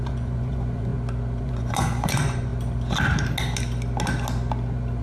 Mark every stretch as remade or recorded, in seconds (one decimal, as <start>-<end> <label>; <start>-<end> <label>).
0.0-0.9 remade; 0.9-1.4 recorded; 1.4-2.5 remade; 2.5-5.0 recorded